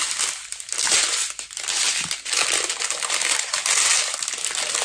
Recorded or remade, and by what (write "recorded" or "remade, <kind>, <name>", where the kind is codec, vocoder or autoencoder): recorded